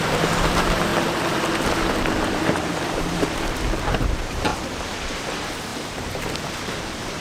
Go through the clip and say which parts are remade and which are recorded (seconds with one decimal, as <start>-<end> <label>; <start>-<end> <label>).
0.0-0.9 remade; 0.9-2.2 recorded; 2.2-4.5 remade; 4.5-5.1 recorded; 5.1-7.2 remade